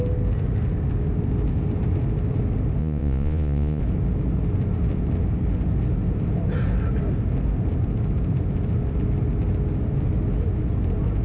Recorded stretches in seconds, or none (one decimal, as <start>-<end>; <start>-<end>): 0.0-2.8; 3.8-11.2